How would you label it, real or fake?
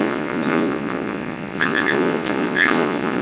fake